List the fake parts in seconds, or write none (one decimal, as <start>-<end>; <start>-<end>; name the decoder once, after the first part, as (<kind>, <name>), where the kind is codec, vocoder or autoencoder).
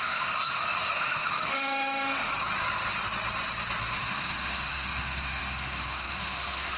0.0-2.3 (autoencoder, DAC-VAE); 3.8-6.8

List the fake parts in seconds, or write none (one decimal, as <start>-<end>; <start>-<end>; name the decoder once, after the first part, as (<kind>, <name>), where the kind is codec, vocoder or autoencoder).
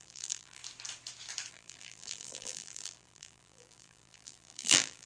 0.0-0.6 (vocoder, BigVGAN v2); 1.5-5.1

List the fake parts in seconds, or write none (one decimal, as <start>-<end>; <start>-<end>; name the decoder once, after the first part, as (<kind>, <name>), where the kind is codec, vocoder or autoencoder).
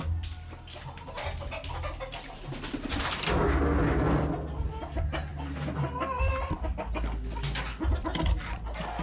none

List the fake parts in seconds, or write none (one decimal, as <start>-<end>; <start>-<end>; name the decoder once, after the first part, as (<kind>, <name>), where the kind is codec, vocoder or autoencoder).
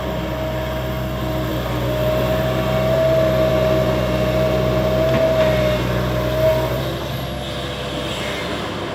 none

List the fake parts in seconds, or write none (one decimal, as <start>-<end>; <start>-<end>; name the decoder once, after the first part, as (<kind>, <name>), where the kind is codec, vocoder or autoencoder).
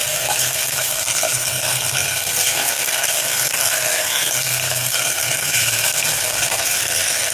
0.0-7.3 (codec, SNAC)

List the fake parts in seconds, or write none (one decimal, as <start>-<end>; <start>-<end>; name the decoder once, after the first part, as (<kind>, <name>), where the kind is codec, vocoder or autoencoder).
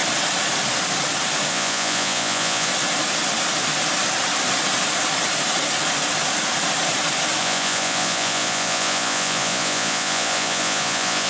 1.5-2.7 (vocoder, Vocos); 7.4-11.3